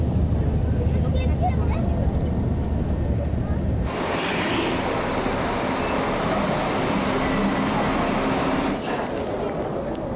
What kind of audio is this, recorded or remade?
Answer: recorded